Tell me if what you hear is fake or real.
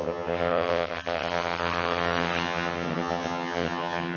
fake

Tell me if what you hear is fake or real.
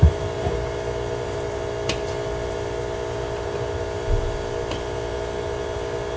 real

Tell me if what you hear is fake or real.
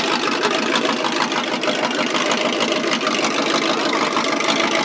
real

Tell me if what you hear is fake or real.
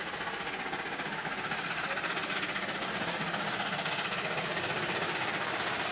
real